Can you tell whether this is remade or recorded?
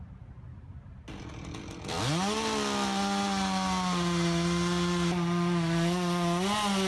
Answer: recorded